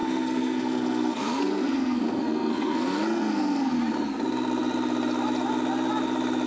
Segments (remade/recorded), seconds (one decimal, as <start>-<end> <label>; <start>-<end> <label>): 0.0-3.7 remade; 3.7-6.5 recorded